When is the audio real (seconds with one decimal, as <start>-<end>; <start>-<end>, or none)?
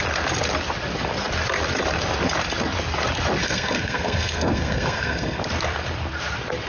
0.0-3.4; 5.4-6.7